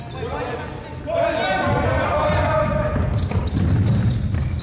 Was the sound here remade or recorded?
recorded